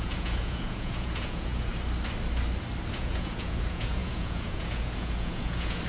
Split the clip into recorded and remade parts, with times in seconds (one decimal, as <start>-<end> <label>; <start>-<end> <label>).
0.0-1.7 remade; 1.7-2.9 recorded; 2.9-5.9 remade